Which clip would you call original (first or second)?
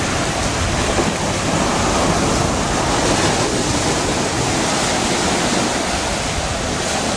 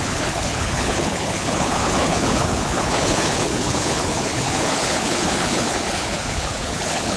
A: first